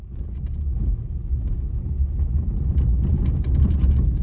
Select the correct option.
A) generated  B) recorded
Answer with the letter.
B